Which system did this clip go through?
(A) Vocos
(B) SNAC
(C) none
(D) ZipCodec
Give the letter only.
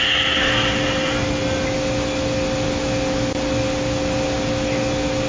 C